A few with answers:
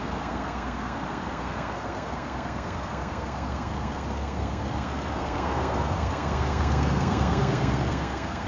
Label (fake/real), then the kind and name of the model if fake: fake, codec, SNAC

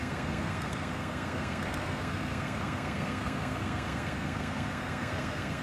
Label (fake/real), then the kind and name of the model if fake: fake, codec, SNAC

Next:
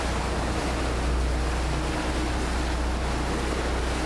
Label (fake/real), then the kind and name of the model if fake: real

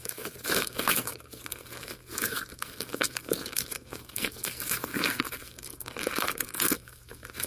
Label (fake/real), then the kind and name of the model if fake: fake, codec, SNAC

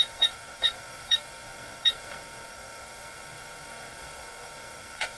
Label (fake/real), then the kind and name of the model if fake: fake, codec, SNAC